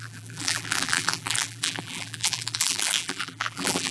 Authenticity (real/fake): fake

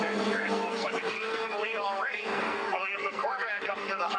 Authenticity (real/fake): fake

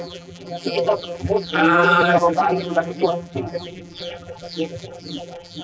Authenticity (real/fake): fake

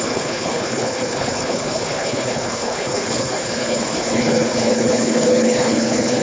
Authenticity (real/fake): fake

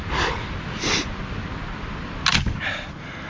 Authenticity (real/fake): real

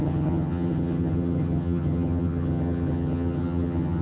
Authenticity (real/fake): fake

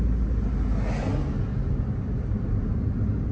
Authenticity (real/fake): real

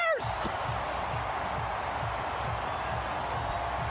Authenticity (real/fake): real